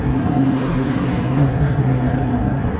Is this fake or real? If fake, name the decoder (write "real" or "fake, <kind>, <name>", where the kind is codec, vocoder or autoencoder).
fake, codec, SNAC